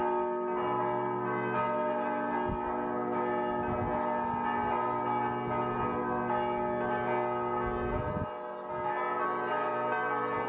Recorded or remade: recorded